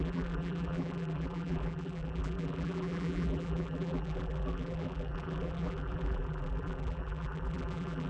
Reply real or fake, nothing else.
fake